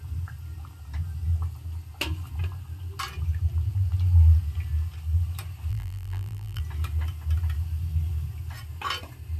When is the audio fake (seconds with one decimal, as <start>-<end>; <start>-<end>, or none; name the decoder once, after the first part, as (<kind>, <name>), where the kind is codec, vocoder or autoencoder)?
5.7-6.6 (vocoder, BigVGAN v2)